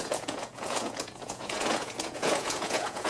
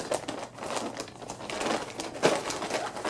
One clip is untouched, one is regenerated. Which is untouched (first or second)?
second